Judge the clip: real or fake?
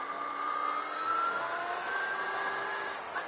real